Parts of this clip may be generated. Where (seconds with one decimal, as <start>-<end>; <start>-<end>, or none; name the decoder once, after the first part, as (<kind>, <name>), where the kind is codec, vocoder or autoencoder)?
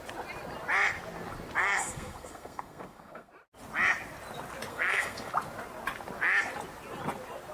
1.6-3.3 (codec, SNAC); 4.7-5.3